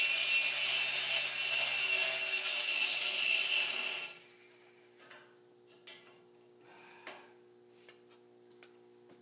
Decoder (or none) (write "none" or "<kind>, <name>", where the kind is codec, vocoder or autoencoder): none